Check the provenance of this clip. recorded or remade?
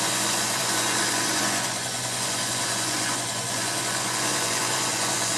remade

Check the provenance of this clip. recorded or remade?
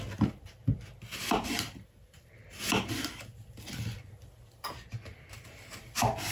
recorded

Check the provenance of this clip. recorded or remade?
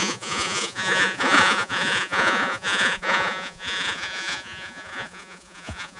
remade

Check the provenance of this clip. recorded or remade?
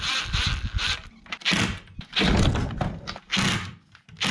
recorded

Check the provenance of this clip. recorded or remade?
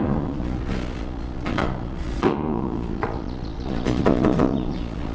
remade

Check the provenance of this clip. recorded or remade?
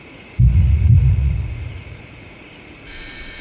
remade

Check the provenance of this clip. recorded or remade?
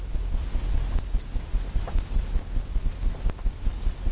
recorded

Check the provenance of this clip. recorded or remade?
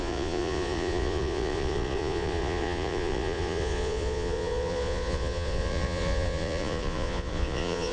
remade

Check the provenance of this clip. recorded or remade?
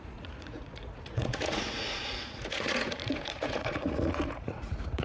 remade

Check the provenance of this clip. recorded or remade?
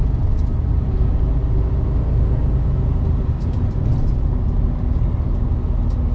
recorded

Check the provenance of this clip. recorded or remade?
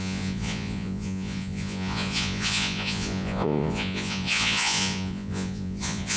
remade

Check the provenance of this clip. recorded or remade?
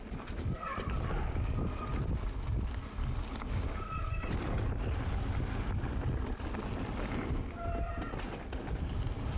recorded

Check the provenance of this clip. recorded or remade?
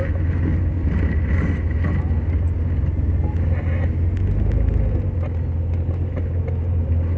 recorded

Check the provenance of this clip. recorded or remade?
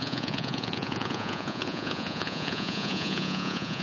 remade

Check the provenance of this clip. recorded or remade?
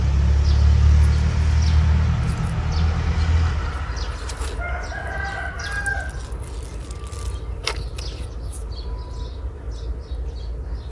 recorded